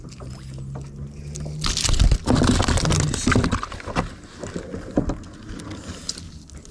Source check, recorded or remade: recorded